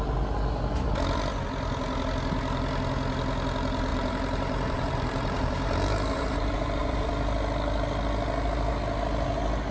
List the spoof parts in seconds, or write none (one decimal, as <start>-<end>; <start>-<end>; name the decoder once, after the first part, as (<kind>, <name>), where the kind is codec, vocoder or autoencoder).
3.9-7.1 (vocoder, BigVGAN v2)